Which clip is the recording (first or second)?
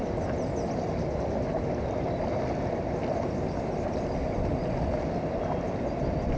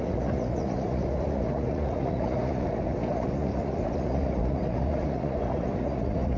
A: first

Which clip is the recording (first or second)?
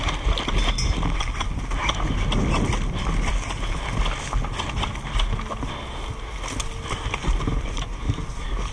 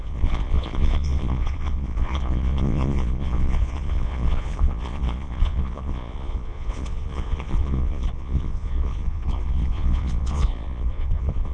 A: first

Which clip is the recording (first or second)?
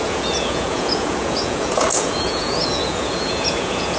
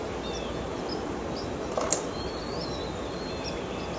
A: second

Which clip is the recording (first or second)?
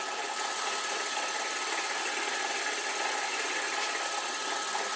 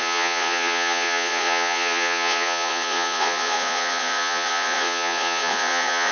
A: first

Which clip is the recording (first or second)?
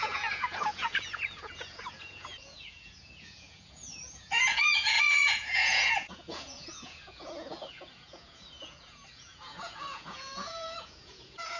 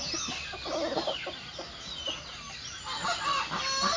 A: second